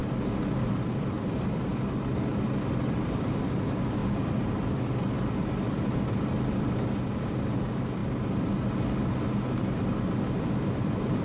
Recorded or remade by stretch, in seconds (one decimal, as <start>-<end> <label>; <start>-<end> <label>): 0.0-0.5 recorded; 0.5-1.7 remade; 1.7-2.3 recorded; 2.3-8.0 remade; 8.0-9.7 recorded; 9.7-11.2 remade